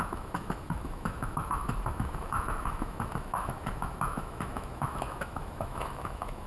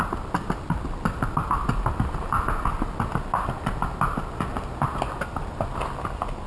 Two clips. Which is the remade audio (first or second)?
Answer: first